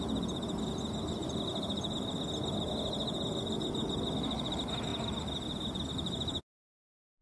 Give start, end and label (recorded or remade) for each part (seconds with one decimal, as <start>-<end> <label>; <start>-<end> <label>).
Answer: 0.0-7.2 recorded